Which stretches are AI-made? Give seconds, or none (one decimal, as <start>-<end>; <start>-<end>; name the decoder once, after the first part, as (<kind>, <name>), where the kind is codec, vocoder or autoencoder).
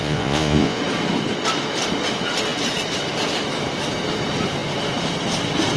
0.0-0.8 (vocoder, Vocos)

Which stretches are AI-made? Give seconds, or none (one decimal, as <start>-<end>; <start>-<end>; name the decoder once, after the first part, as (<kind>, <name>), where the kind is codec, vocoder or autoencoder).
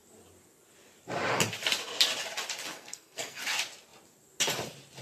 2.7-3.4 (codec, SNAC)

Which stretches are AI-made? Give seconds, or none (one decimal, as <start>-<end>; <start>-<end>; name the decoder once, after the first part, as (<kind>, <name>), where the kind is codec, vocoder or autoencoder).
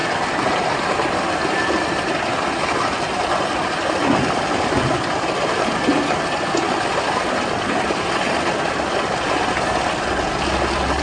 none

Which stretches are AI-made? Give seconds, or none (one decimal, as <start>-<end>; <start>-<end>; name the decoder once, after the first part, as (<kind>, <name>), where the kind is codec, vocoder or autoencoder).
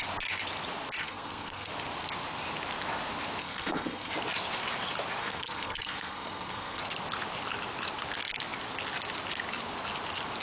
1.0-1.7 (codec, SNAC); 3.4-4.1; 5.2-6.8